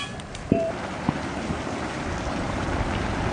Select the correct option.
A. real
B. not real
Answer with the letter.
B